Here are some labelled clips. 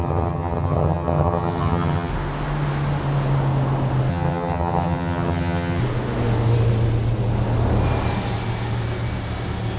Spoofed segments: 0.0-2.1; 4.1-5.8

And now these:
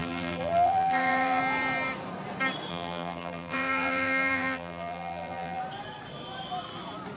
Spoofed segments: 0.0-1.4; 2.7-5.6

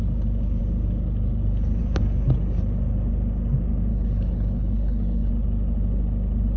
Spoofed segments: 3.9-5.3

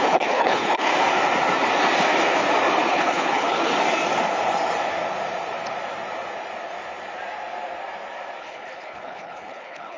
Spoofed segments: 0.0-0.9; 2.9-3.7; 8.4-10.0

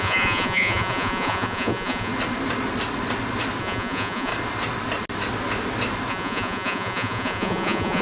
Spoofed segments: 0.0-2.1; 3.6-4.3; 6.1-8.0

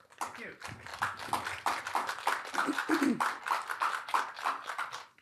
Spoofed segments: 0.0-0.9; 1.8-4.1